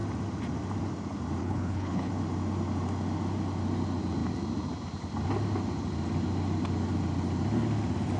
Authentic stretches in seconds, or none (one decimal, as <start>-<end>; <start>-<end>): 0.0-1.4; 2.1-8.2